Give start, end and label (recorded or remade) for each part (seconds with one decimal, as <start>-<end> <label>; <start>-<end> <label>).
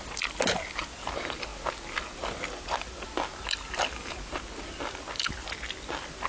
0.0-6.3 recorded